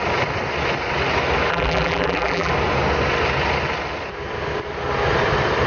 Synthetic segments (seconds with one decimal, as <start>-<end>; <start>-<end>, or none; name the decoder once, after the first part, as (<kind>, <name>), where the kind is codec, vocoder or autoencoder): 1.5-2.5 (vocoder, BigVGAN v2)